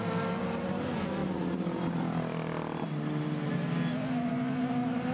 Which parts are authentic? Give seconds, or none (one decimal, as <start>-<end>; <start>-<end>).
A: 0.0-5.1